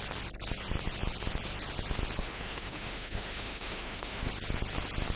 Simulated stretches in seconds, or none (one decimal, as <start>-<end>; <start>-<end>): 2.2-4.3